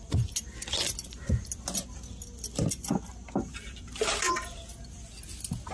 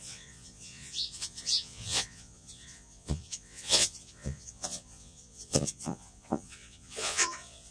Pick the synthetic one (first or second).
second